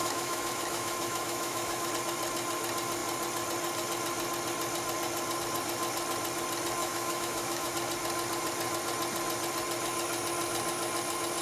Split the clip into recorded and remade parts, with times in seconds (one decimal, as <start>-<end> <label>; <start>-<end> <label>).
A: 0.0-1.9 remade; 1.9-6.8 recorded; 6.8-7.7 remade; 7.7-11.4 recorded